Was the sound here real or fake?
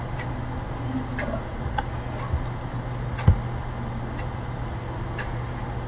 real